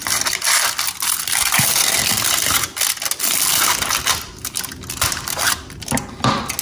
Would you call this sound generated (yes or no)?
no